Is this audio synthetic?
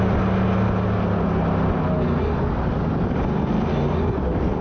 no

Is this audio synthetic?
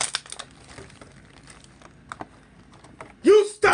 no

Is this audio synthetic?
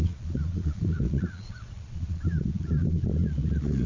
yes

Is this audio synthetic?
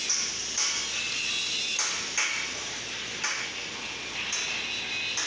no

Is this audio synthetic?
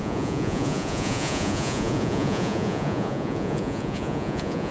yes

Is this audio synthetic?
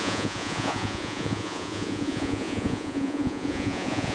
yes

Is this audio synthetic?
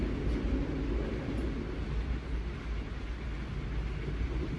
no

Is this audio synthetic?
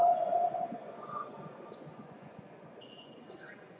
yes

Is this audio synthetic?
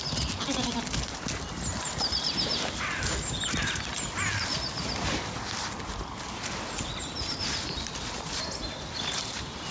no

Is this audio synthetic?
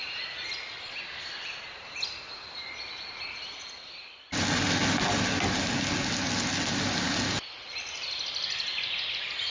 no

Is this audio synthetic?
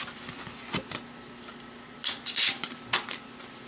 no